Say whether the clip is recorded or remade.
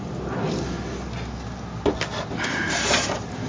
recorded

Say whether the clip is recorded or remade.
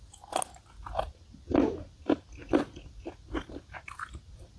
recorded